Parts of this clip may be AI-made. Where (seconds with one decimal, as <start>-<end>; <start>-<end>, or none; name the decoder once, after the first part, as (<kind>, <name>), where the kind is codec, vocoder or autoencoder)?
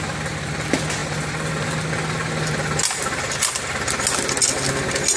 none